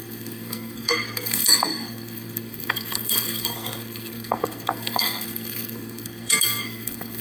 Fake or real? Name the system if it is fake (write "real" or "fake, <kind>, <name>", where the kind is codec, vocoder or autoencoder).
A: fake, codec, SNAC